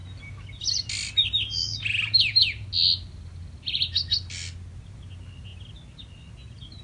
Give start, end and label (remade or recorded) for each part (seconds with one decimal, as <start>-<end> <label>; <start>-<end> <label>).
0.0-6.8 recorded